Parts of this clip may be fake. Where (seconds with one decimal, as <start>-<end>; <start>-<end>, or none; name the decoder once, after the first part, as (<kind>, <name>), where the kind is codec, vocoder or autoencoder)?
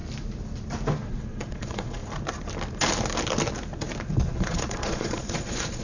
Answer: 1.1-2.0 (vocoder, Vocos); 4.2-5.8